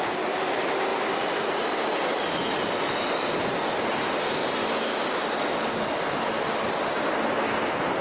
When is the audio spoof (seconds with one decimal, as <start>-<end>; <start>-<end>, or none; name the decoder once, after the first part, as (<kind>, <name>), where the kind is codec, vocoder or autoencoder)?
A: 0.9-2.3 (vocoder, BigVGAN v2); 4.4-5.6